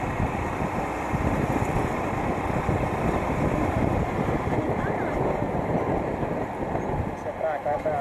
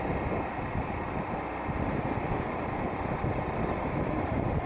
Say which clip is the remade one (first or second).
first